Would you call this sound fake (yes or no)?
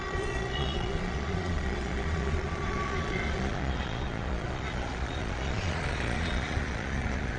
yes